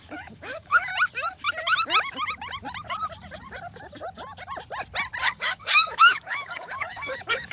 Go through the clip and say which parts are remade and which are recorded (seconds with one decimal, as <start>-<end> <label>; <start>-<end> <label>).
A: 0.0-0.9 remade; 0.9-5.2 recorded; 5.2-7.5 remade